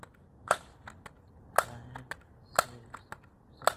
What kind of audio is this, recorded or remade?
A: recorded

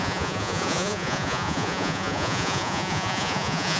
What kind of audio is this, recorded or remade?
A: remade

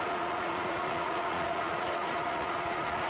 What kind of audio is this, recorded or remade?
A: remade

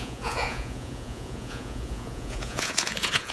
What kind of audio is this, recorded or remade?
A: remade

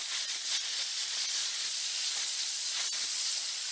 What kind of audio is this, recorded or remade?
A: remade